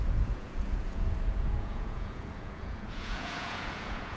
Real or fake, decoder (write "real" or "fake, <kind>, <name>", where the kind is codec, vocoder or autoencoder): fake, vocoder, Vocos